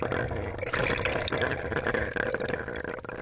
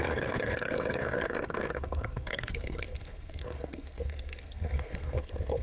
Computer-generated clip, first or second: second